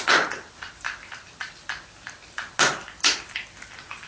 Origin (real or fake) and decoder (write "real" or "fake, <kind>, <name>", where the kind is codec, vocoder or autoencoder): real